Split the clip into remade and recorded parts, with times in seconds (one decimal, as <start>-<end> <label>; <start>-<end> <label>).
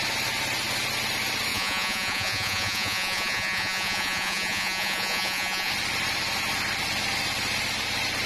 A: 0.0-1.5 recorded; 1.5-5.7 remade; 5.7-8.3 recorded